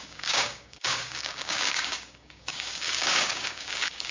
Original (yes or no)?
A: no